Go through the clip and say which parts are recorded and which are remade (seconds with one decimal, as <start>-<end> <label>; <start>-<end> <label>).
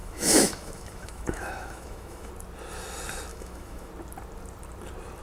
0.0-2.3 remade; 2.3-3.3 recorded; 3.3-3.9 remade; 3.9-5.2 recorded